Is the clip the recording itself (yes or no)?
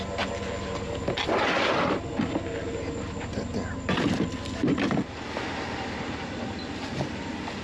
yes